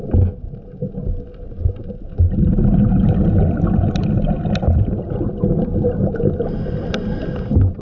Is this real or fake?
real